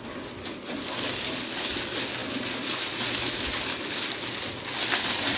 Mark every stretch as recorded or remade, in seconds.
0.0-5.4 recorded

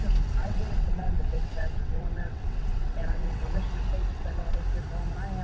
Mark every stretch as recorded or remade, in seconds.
0.0-0.4 recorded; 0.4-3.6 remade; 3.6-4.1 recorded; 4.1-4.6 remade; 4.6-5.4 recorded

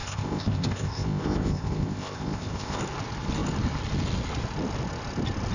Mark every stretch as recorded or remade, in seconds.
0.0-2.8 remade; 2.8-5.5 recorded

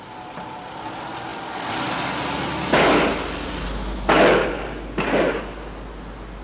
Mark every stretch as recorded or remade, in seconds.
0.0-6.4 recorded

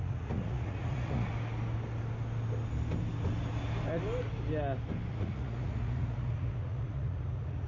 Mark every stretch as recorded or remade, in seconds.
0.0-1.3 remade; 1.3-5.1 recorded; 5.1-7.7 remade

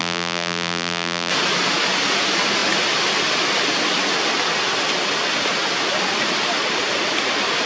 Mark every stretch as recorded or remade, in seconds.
0.0-1.3 remade; 1.3-7.7 recorded

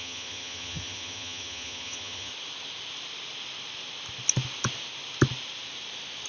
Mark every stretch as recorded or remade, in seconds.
0.0-2.3 remade; 2.3-6.3 recorded